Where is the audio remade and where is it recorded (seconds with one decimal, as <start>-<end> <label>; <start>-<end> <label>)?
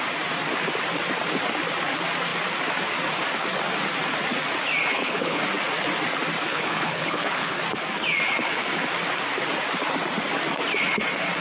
0.0-4.9 recorded; 4.9-5.4 remade; 5.4-6.5 recorded; 6.5-7.6 remade; 7.6-11.4 recorded